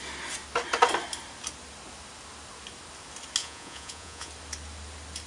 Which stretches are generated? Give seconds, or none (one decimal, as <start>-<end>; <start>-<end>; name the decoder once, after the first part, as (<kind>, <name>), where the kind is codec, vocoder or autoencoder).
3.4-4.3 (vocoder, Vocos)